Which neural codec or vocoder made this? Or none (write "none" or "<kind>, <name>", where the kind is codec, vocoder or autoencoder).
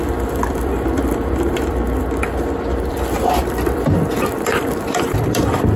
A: vocoder, BigVGAN v2